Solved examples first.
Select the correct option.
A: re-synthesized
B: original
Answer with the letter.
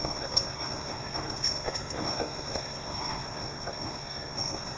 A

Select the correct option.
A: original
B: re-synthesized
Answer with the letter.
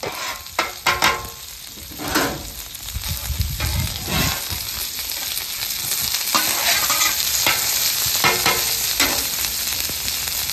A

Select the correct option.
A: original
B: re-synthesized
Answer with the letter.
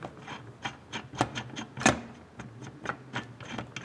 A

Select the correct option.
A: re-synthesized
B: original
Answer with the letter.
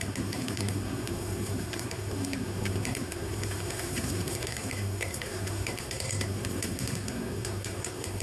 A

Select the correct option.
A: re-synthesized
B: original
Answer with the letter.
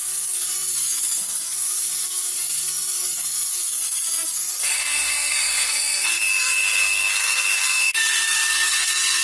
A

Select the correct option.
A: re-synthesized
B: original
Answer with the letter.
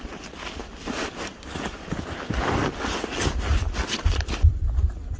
B